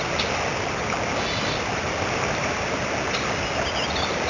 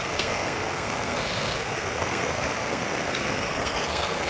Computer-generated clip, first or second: second